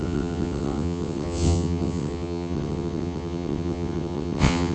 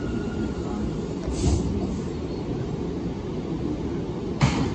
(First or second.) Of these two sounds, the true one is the second